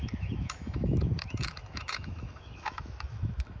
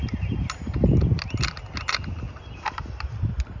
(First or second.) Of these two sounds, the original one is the second